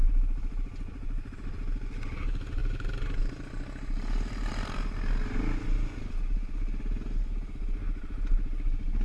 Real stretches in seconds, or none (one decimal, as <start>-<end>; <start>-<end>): 0.0-9.0